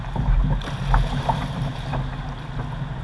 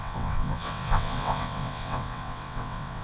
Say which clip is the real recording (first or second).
first